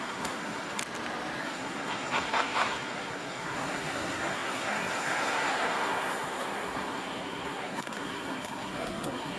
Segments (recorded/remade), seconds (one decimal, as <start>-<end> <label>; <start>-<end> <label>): 0.0-0.8 remade; 0.8-1.4 recorded; 1.4-9.4 remade